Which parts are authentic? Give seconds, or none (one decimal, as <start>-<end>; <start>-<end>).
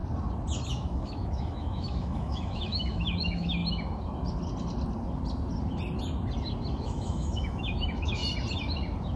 0.0-0.7; 3.6-6.8; 8.2-9.2